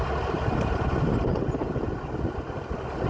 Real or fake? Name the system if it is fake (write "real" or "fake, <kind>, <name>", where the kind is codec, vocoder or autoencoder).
real